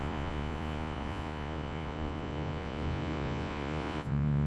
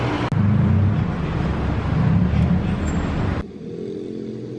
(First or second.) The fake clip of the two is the first